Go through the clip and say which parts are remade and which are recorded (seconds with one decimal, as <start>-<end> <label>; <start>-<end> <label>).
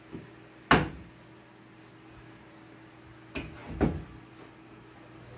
0.0-5.4 recorded